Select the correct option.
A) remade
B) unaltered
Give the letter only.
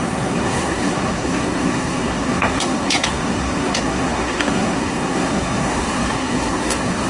A